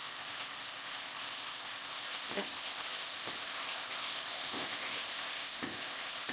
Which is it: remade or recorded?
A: remade